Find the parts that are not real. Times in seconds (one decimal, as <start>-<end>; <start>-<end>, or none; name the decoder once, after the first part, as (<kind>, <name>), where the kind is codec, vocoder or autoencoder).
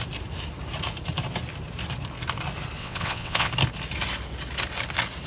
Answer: 2.8-3.5 (vocoder, WaveNeXt)